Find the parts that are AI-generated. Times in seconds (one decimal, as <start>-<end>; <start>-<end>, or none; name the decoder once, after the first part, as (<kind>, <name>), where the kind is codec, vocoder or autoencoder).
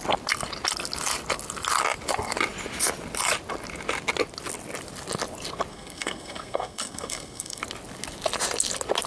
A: 5.7-7.6 (codec, SNAC)